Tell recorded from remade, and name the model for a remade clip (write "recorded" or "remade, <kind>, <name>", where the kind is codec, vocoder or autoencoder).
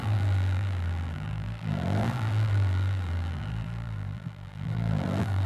remade, vocoder, BigVGAN v2